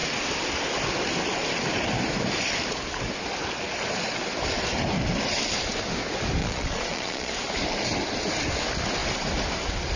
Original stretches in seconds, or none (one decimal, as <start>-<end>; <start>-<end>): 0.0-6.4; 7.3-10.0